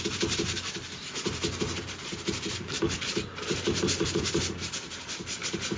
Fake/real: fake